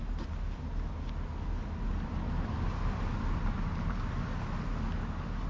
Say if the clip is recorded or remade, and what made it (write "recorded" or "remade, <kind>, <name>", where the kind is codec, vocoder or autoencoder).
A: recorded